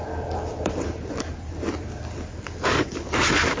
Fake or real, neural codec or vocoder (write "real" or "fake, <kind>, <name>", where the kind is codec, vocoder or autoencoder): real